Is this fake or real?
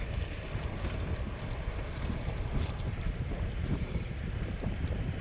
fake